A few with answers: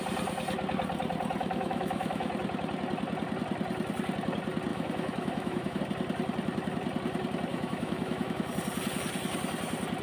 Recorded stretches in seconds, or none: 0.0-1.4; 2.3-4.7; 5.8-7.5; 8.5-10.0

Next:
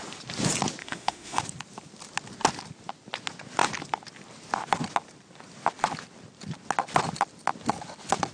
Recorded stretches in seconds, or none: 0.0-0.8; 1.4-8.3

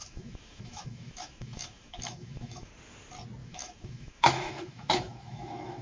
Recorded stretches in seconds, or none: 2.7-3.4